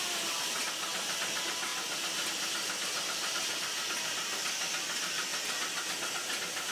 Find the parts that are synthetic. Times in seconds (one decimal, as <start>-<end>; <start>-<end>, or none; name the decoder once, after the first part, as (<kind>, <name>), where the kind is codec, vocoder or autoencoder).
1.7-2.3 (vocoder, BigVGAN v2)